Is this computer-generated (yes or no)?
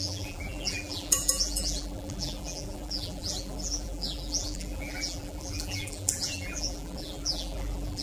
yes